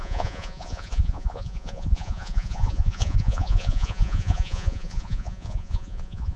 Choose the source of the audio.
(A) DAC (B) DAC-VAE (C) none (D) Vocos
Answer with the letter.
D